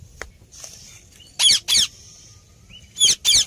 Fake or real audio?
real